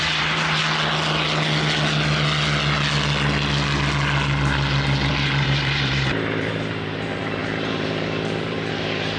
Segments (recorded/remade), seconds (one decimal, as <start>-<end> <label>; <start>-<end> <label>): 0.0-0.6 remade; 0.6-5.1 recorded; 5.1-9.2 remade